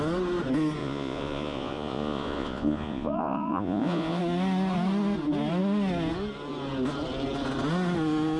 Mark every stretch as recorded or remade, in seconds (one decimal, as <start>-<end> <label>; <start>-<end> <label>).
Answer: 0.0-0.8 recorded; 0.8-4.2 remade; 4.2-8.4 recorded